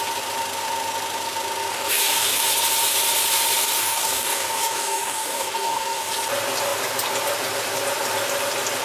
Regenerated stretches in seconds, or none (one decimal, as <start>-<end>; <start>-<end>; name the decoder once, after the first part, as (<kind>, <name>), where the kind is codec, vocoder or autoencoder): 1.7-2.4 (codec, DAC); 3.8-6.1